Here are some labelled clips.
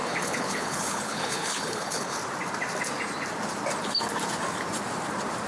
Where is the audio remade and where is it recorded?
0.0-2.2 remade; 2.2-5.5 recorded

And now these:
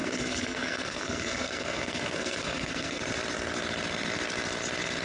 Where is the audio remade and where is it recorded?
0.0-3.0 remade; 3.0-5.0 recorded

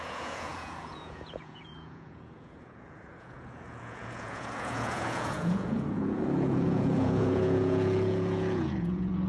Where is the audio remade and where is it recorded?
0.0-9.3 remade